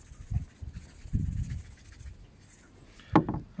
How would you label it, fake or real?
real